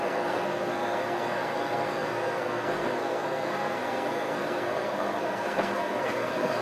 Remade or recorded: remade